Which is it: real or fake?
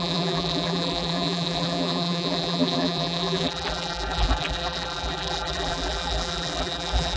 fake